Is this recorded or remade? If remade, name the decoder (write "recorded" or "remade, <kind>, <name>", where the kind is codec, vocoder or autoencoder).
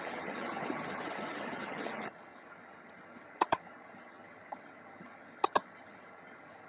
remade, vocoder, HiFi-GAN